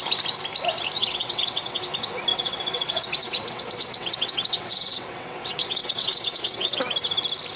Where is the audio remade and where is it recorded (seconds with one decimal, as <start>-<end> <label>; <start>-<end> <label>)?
0.0-1.0 recorded; 1.0-1.8 remade; 1.8-2.3 recorded; 2.3-6.8 remade; 6.8-7.6 recorded